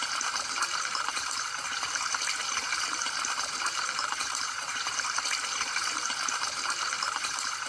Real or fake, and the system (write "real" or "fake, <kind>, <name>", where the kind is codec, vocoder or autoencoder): fake, vocoder, BigVGAN v2